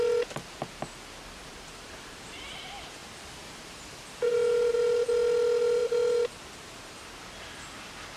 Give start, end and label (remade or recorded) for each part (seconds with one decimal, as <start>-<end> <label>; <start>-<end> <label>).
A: 0.0-1.5 recorded; 1.5-2.3 remade; 2.3-3.0 recorded; 3.0-3.8 remade; 3.8-5.8 recorded; 5.8-7.3 remade; 7.3-8.2 recorded